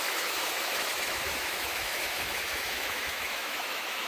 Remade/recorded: remade